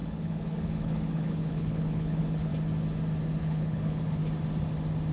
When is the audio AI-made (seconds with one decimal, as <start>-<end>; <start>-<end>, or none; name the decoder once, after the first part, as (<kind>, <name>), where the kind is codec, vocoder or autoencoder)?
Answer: 0.0-2.5 (codec, HILCodec); 3.4-4.2

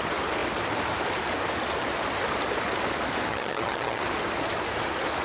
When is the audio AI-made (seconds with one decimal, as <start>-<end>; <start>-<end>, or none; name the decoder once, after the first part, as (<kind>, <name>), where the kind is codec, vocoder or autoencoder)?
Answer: 3.3-4.0 (vocoder, HiFi-GAN)

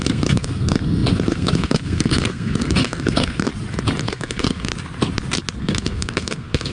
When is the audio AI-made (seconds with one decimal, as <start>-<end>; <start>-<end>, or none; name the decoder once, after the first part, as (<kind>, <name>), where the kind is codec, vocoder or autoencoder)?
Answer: 0.0-3.5 (codec, SNAC); 4.0-4.7; 5.6-6.7

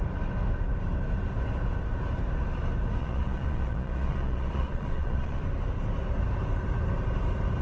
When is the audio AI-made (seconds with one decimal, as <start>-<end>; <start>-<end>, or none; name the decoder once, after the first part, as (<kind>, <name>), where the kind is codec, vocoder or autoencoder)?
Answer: 3.0-5.4 (vocoder, Vocos)

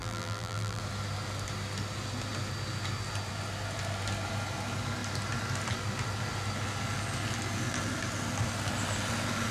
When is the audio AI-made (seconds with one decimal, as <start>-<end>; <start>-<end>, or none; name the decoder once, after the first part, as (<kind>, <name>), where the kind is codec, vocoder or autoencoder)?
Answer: 0.0-0.8 (vocoder, BigVGAN v2)

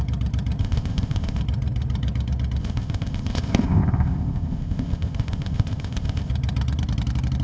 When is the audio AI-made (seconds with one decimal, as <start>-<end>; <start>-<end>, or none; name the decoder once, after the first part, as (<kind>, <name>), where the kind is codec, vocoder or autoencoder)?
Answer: 0.6-1.4 (codec, ZipCodec); 2.6-6.3

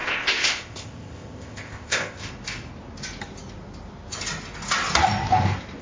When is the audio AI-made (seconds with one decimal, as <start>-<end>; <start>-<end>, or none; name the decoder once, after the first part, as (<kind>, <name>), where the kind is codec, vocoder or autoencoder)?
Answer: 0.0-2.3 (codec, ZipCodec)